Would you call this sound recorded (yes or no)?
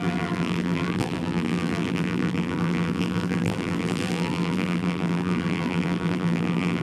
no